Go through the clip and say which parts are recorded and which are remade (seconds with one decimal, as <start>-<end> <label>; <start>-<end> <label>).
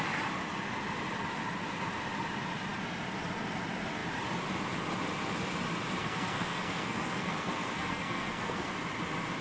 0.0-6.0 recorded; 6.0-8.7 remade; 8.7-9.4 recorded